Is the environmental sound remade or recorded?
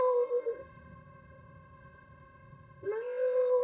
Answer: remade